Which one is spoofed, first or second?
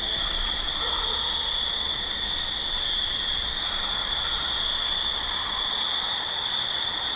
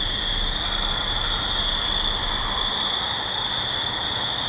first